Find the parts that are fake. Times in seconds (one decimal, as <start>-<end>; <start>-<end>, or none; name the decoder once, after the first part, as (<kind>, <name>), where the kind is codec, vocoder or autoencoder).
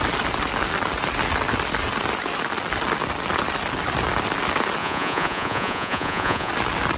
4.8-6.5 (vocoder, Vocos)